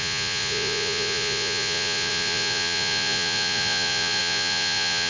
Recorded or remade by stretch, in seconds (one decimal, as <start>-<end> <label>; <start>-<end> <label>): 0.0-5.1 remade